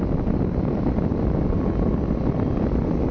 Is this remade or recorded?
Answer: recorded